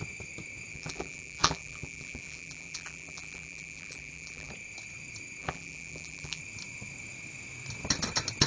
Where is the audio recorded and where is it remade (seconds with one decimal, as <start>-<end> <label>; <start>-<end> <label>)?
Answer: 0.0-0.7 recorded; 0.7-4.5 remade; 4.5-5.4 recorded; 5.4-6.4 remade; 6.4-8.5 recorded